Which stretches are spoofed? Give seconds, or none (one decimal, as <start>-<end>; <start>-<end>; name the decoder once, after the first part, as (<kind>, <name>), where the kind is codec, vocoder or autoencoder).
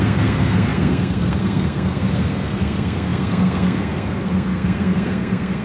0.0-5.6 (codec, SNAC)